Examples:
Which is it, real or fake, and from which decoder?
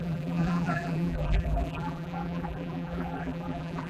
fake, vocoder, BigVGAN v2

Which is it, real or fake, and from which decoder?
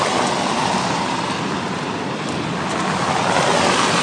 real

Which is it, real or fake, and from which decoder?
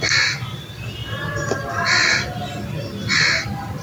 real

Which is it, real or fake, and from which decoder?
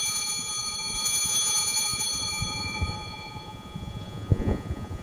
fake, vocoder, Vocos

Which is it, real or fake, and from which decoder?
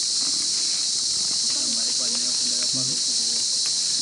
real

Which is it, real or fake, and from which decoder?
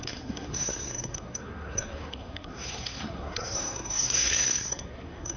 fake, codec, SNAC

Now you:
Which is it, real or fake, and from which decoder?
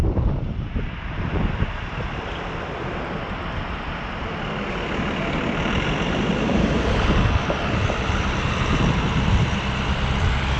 fake, vocoder, BigVGAN v2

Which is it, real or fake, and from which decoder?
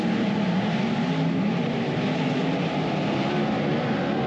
real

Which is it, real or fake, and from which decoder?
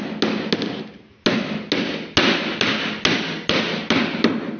real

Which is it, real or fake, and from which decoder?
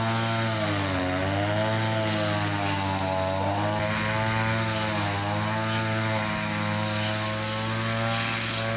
real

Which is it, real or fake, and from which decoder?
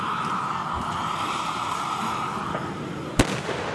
real